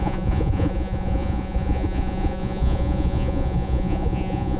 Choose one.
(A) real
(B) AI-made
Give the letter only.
B